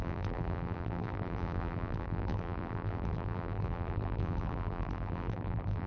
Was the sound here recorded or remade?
remade